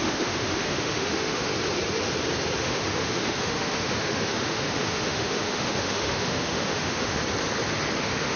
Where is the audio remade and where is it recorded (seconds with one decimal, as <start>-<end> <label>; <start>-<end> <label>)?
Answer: 0.0-1.5 remade; 1.5-2.6 recorded; 2.6-7.2 remade; 7.2-8.0 recorded; 8.0-8.4 remade